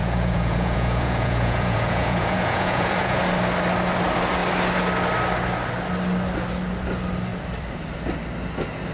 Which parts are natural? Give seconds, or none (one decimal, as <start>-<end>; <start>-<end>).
3.2-8.9